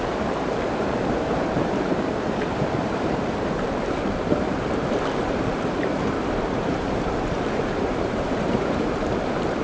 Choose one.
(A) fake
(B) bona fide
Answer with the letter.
A